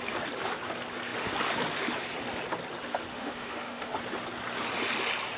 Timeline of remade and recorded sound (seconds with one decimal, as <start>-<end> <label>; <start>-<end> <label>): 0.0-3.1 recorded; 3.1-4.0 remade; 4.0-5.4 recorded